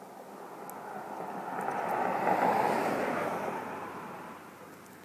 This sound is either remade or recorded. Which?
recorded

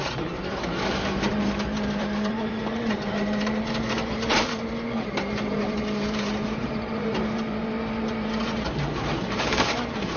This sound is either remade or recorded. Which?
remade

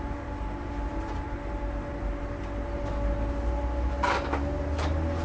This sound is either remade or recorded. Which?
recorded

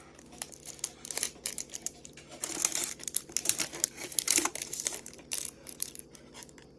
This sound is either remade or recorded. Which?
remade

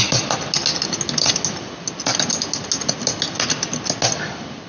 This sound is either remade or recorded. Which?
recorded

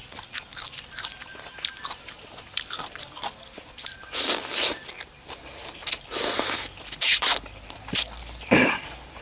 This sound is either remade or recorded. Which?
remade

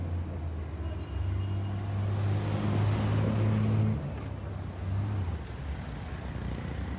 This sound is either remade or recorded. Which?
recorded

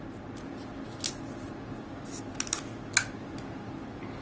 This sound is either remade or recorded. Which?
recorded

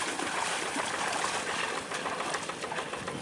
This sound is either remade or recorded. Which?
recorded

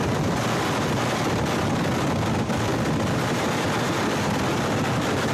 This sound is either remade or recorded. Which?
recorded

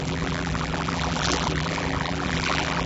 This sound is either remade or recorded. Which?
remade